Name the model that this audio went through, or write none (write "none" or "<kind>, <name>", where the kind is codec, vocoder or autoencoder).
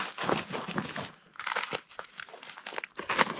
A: none